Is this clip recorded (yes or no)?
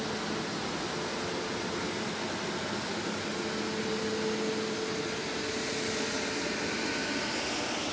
yes